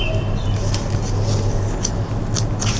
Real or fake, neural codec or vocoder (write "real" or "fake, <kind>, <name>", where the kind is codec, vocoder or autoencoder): real